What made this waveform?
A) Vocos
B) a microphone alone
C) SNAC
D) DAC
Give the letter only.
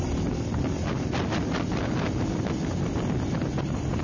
B